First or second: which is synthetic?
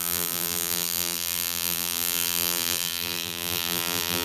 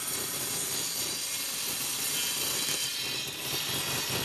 first